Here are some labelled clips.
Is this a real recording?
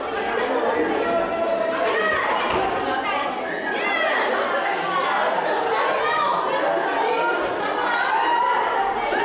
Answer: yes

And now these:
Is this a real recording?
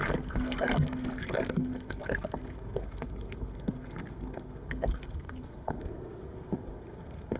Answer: no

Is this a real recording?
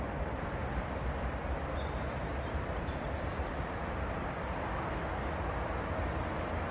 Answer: yes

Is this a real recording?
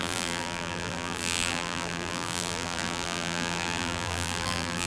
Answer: no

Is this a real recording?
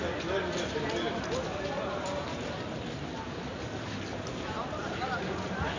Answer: yes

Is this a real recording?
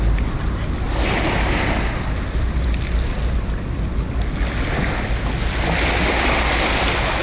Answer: yes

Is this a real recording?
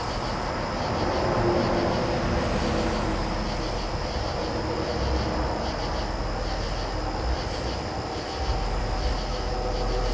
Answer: yes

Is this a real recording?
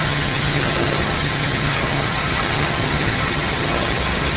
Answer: no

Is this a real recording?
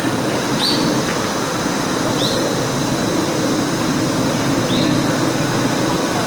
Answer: yes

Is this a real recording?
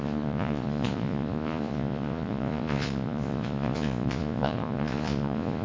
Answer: no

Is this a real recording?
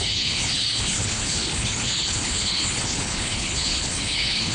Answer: no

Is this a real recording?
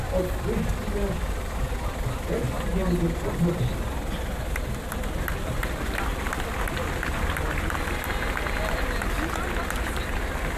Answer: yes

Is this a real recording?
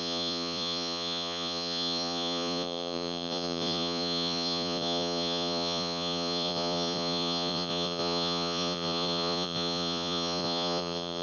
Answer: no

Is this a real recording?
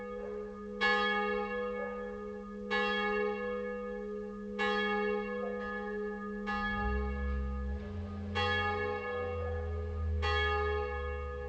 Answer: yes